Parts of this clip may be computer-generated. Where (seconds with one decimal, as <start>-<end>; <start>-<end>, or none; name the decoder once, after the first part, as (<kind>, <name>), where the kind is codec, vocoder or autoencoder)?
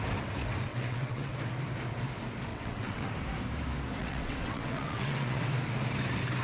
0.7-1.3 (vocoder, WaveNeXt); 2.5-3.1; 4.0-5.4